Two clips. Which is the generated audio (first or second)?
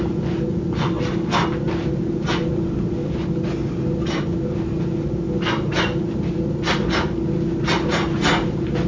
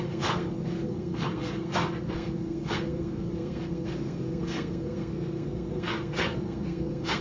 second